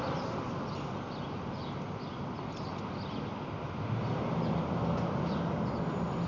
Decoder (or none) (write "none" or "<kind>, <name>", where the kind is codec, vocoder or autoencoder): none